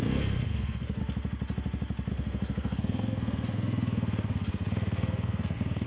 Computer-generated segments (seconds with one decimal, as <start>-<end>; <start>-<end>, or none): 0.0-1.0; 2.1-5.9

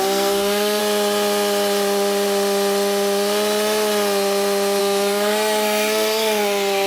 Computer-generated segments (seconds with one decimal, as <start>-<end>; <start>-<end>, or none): 0.0-0.8; 4.8-6.9

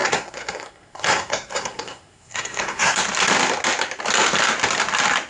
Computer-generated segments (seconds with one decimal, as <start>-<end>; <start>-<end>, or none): 0.0-3.0

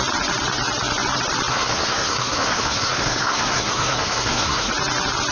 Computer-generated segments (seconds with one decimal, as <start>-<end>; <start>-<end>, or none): 1.5-4.7

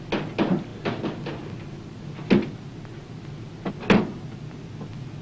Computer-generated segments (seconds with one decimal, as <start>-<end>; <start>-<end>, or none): none

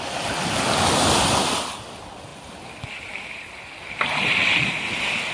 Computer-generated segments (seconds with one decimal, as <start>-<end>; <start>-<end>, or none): none

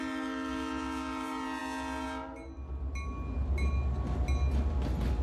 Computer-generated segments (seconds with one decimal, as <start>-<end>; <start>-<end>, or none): none